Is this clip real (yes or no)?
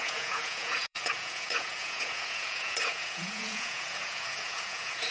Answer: no